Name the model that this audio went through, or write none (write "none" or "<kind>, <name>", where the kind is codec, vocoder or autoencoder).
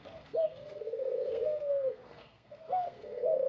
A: codec, SNAC